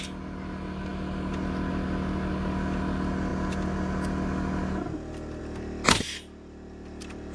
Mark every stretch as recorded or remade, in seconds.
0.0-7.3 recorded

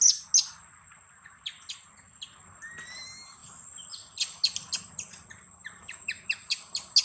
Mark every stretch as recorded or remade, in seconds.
0.0-7.0 recorded

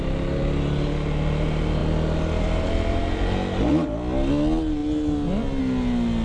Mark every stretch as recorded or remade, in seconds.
0.0-6.2 recorded

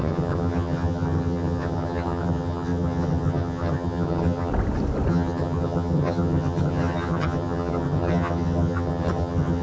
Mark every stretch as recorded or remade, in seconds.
0.0-4.5 remade; 4.5-5.1 recorded; 5.1-9.6 remade

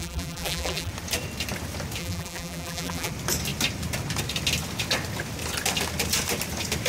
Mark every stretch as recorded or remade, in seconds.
0.0-0.9 remade; 0.9-2.0 recorded; 2.0-3.1 remade; 3.1-6.9 recorded

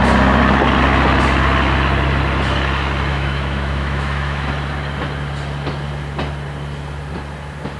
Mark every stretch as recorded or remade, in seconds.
0.0-3.1 recorded; 3.1-4.5 remade; 4.5-7.8 recorded

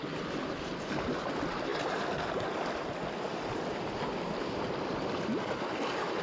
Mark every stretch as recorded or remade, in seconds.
0.0-6.2 recorded